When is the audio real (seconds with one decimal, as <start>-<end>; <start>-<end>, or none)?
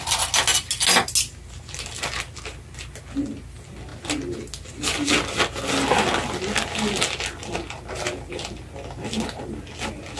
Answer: 0.0-10.2